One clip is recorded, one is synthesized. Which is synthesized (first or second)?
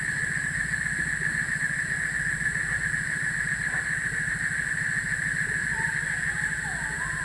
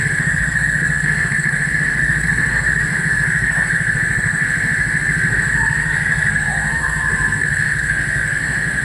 second